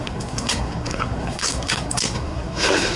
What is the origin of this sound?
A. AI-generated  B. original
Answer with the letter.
A